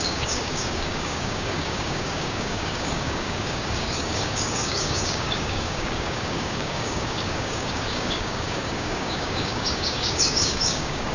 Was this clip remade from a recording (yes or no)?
yes